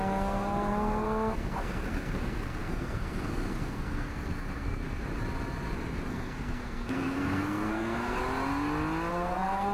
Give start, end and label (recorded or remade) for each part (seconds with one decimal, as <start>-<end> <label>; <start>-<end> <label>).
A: 0.0-4.8 remade; 4.8-6.1 recorded; 6.1-8.2 remade; 8.2-9.1 recorded; 9.1-9.7 remade